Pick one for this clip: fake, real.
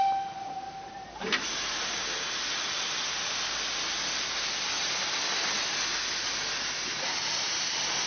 real